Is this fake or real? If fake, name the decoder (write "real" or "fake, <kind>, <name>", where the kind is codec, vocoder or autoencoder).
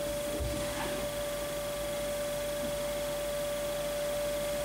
real